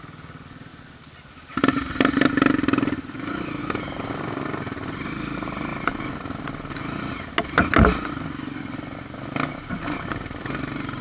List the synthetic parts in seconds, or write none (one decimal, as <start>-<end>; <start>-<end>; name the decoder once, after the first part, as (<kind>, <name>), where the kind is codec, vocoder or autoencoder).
none